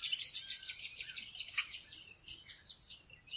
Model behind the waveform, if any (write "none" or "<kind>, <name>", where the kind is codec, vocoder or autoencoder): none